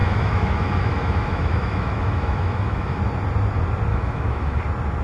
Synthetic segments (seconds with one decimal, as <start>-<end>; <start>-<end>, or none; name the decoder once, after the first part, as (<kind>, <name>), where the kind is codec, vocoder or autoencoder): 0.0-3.0 (autoencoder, DAC-VAE); 3.9-4.6